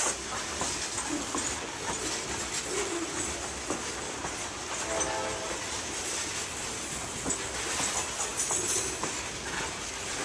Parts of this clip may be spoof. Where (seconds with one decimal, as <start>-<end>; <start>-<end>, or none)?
none